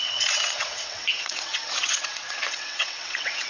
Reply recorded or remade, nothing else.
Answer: remade